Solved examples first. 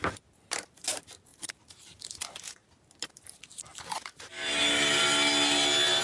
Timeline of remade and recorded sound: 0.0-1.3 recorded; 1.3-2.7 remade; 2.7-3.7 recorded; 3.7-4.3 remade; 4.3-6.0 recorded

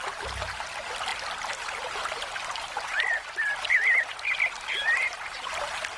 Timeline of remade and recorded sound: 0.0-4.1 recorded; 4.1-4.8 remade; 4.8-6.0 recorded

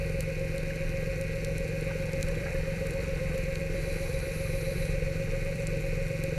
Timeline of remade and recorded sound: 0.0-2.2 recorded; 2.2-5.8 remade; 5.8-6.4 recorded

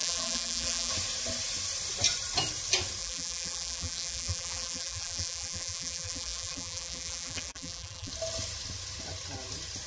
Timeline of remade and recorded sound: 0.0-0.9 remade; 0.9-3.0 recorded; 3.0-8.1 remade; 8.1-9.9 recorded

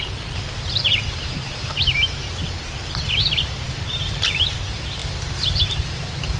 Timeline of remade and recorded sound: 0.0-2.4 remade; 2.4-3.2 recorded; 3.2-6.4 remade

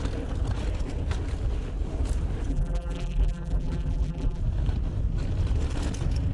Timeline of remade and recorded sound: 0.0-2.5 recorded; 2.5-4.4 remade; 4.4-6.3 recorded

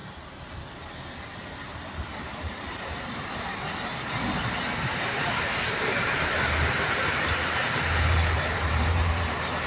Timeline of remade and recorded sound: 0.0-9.7 remade